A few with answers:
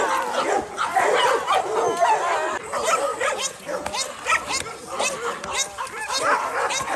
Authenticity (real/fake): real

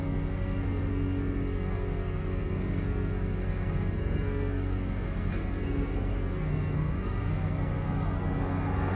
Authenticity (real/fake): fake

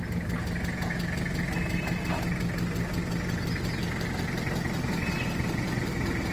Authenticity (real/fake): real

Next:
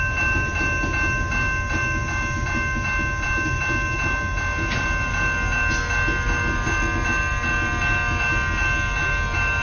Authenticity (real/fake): real